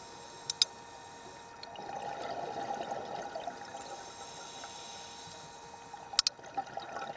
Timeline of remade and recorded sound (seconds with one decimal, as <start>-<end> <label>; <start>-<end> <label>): 0.0-7.2 recorded